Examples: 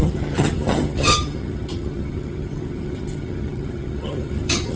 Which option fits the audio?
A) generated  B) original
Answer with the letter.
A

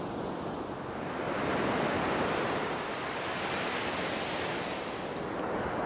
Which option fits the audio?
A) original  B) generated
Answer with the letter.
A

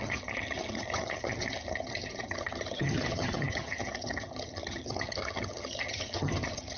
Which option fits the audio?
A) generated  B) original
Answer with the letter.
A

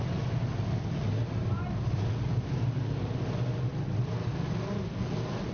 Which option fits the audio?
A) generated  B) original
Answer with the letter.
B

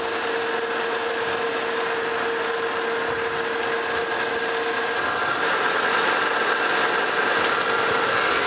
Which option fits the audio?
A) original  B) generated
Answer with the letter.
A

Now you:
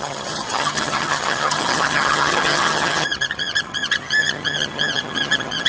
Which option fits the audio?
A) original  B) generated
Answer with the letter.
B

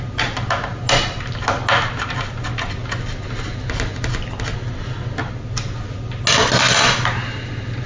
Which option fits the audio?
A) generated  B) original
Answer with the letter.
B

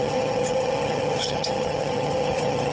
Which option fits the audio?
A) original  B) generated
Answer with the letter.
B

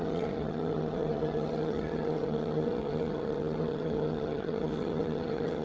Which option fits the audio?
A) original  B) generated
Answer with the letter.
B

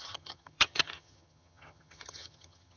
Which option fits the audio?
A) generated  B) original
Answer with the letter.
A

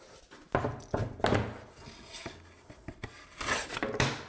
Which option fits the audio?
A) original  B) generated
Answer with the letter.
A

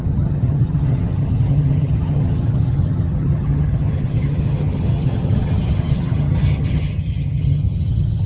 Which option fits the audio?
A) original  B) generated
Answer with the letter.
B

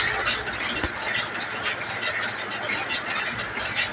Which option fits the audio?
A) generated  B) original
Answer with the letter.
B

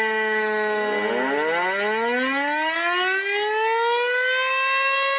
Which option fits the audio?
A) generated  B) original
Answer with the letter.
B